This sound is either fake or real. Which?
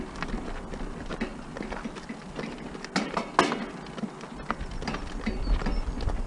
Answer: real